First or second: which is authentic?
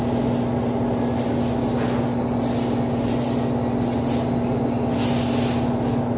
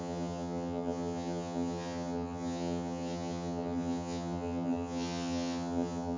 first